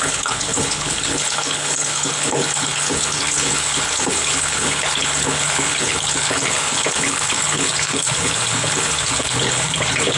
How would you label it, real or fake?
fake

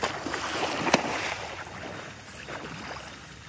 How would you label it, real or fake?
real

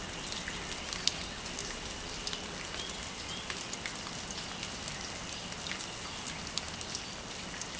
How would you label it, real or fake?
real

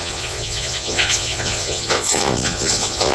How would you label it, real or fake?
fake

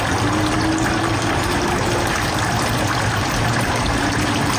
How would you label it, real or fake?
real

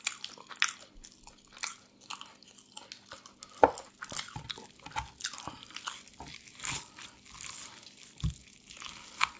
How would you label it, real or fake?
real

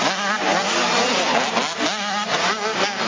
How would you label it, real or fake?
real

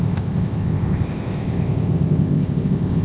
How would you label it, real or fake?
fake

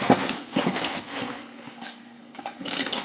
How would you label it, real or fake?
fake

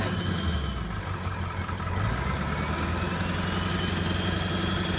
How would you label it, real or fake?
real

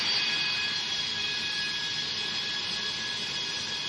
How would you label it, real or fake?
real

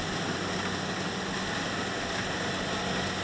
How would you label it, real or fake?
real